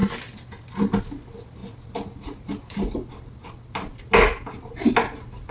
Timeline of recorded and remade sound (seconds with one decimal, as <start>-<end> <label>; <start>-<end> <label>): 0.0-5.5 recorded